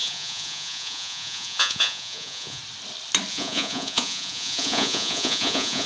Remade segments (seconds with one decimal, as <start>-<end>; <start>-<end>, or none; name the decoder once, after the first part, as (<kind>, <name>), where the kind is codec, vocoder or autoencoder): 0.0-2.6 (vocoder, Vocos); 3.3-5.9